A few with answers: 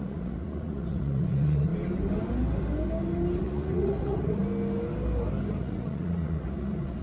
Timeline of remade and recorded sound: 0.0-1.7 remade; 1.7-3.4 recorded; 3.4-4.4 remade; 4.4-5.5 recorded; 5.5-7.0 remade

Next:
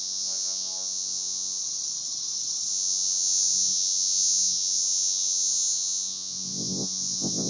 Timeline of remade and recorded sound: 0.0-1.6 remade; 1.6-2.7 recorded; 2.7-7.5 remade

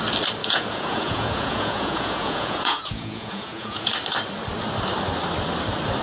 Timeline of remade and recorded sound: 0.0-0.4 recorded; 0.4-3.9 remade; 3.9-6.0 recorded

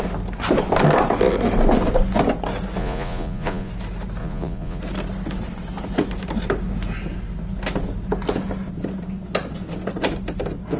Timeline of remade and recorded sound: 0.0-2.8 recorded; 2.8-3.7 remade; 3.7-4.2 recorded; 4.2-4.8 remade; 4.8-10.8 recorded

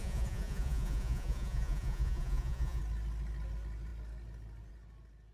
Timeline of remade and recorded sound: 0.0-2.8 remade; 2.8-5.3 recorded